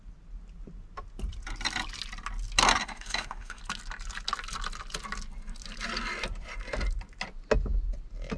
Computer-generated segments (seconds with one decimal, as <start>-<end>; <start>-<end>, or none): 2.8-3.6